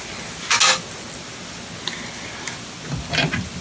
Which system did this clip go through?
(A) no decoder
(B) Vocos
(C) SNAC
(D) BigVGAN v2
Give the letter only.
A